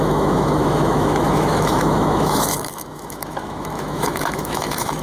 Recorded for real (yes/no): no